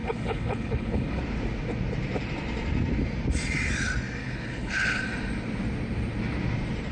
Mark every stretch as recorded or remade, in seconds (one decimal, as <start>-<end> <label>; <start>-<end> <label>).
0.0-1.2 remade; 1.2-4.2 recorded; 4.2-5.0 remade; 5.0-6.9 recorded